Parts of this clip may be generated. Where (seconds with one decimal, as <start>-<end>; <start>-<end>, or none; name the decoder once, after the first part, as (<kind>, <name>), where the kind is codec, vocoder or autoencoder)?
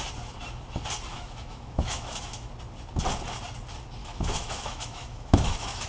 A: 1.1-2.5 (autoencoder, DAC-VAE); 4.0-5.9